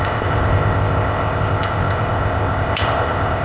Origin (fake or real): fake